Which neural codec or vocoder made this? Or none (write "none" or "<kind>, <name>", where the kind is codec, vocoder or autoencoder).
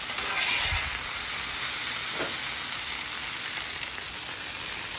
none